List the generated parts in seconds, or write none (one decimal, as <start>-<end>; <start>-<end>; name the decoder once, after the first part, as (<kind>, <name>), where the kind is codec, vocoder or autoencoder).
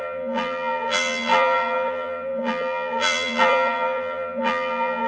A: 0.0-5.1 (vocoder, BigVGAN v2)